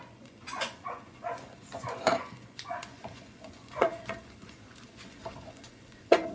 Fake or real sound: fake